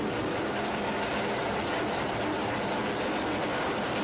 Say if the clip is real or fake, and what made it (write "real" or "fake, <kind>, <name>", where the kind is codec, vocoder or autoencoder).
real